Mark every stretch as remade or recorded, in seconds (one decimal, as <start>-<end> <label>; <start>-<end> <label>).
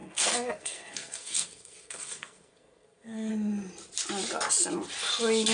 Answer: 0.0-3.3 remade; 3.3-5.5 recorded